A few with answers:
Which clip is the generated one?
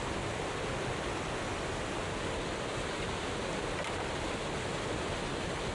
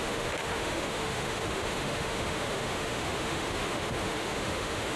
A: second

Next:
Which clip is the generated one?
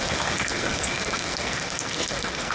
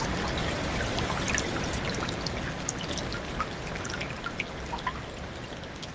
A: first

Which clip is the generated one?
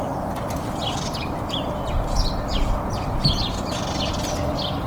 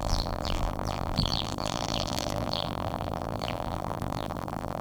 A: second